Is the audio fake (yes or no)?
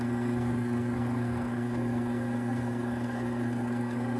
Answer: yes